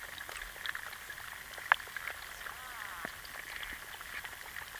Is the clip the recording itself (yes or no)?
yes